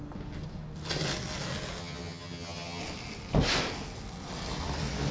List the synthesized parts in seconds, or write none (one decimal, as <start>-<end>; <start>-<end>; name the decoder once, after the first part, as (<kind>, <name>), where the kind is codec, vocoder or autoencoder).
1.8-2.8 (vocoder, HiFi-GAN)